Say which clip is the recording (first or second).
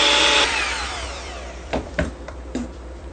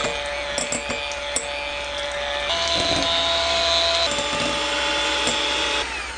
second